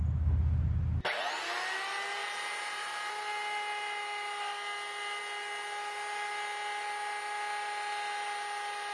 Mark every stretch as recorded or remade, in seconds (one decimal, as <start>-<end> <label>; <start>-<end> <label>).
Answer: 0.0-8.9 recorded